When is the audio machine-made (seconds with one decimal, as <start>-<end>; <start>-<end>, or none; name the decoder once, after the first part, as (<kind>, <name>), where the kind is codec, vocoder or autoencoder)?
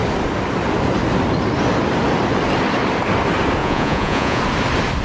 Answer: 3.6-4.4 (vocoder, Vocos)